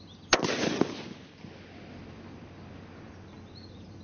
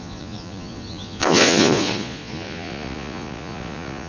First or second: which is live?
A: first